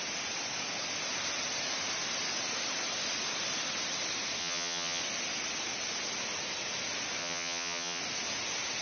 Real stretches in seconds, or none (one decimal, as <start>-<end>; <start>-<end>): 0.0-4.4; 5.0-7.2; 8.0-8.8